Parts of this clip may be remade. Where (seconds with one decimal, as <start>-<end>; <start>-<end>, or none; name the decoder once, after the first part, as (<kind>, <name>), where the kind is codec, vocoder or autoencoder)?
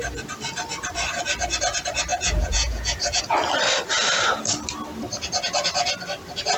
2.1-3.2 (vocoder, Vocos)